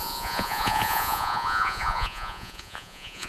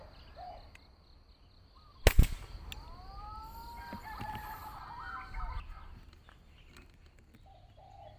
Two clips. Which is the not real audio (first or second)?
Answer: first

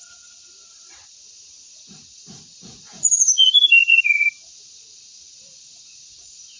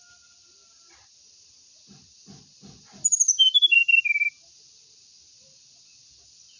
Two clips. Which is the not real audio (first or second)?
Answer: first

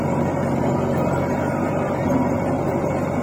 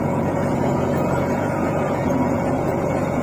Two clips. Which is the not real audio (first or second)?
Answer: second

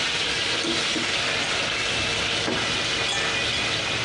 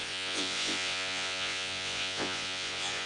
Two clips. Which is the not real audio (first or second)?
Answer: second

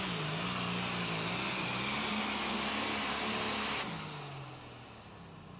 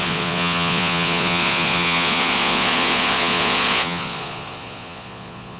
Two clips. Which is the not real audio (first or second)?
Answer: second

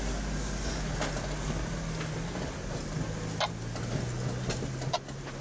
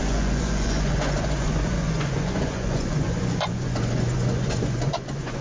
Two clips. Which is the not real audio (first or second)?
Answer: second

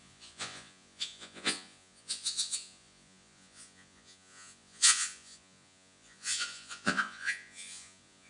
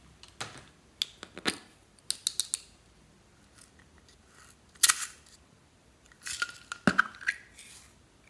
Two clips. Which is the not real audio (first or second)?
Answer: first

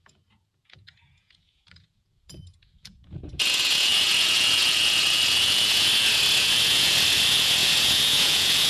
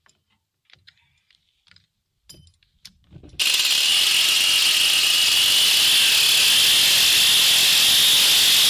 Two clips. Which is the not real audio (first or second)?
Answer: first